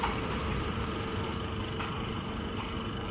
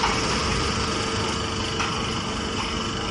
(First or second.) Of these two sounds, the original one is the second